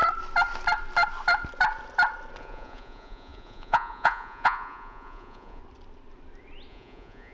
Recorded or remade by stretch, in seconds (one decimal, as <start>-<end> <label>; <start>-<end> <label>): 0.0-2.4 recorded; 2.4-5.6 remade; 5.6-6.7 recorded; 6.7-7.3 remade